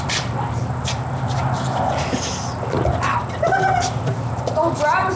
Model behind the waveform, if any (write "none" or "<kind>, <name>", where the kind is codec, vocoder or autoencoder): none